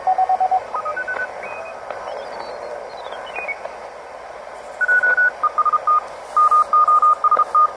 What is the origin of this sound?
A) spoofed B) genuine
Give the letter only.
B